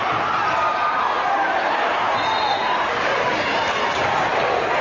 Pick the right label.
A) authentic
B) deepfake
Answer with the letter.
B